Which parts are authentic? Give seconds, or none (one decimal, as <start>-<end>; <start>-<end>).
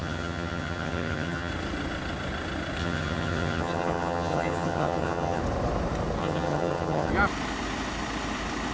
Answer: 1.5-2.8; 5.4-6.2; 7.1-8.7